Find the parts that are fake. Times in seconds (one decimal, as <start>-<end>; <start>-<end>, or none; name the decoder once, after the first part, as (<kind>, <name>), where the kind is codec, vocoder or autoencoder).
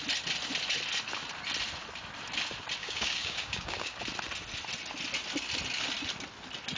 2.8-4.0 (codec, DAC)